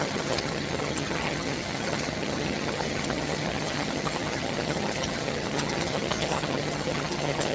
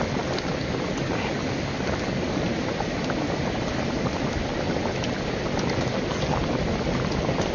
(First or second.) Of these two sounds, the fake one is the first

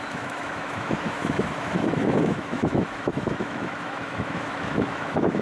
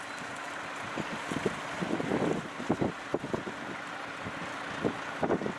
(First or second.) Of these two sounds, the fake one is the first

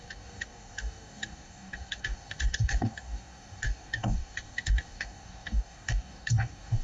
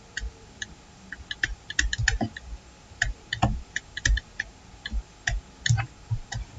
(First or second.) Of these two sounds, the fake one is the first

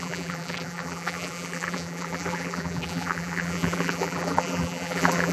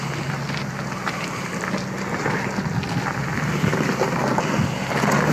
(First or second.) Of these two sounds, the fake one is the first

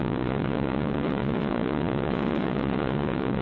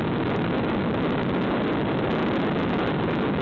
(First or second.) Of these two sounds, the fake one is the first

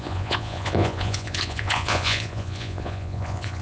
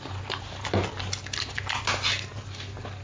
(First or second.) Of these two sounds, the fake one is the first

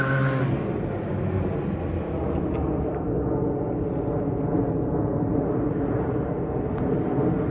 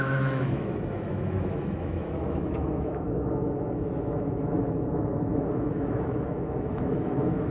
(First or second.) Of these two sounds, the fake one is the second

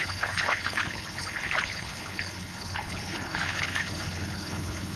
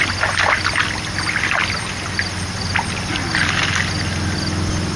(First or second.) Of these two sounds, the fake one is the first